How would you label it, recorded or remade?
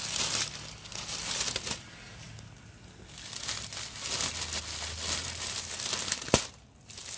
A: recorded